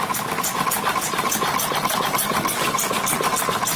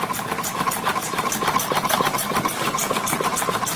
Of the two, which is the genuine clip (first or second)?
first